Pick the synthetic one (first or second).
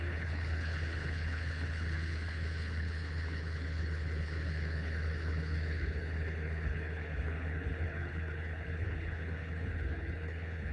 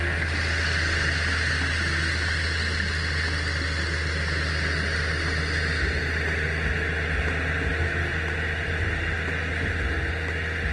first